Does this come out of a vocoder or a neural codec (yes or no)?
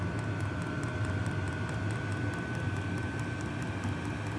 no